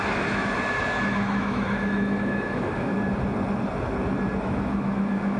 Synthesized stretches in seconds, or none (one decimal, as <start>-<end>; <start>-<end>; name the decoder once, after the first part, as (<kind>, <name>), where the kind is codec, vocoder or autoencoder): 0.0-2.9 (autoencoder, DAC-VAE); 4.4-5.4